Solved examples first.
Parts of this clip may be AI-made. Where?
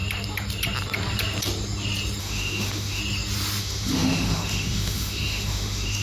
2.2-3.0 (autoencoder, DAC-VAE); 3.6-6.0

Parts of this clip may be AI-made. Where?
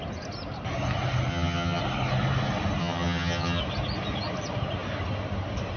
1.3-1.8 (vocoder, HiFi-GAN); 2.8-3.6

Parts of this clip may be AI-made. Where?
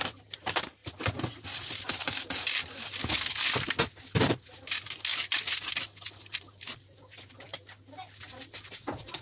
0.0-9.2 (vocoder, BigVGAN v2)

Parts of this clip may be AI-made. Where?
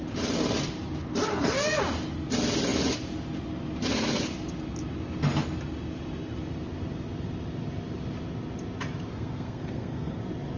1.3-1.8 (codec, SNAC); 9.1-10.2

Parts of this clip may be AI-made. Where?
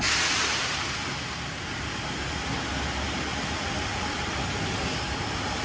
3.3-4.4 (vocoder, BigVGAN v2)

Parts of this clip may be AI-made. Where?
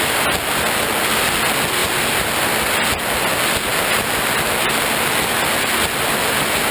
none